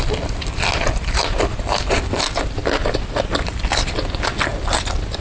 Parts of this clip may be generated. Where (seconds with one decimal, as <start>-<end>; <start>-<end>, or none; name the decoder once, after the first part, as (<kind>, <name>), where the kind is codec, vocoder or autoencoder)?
none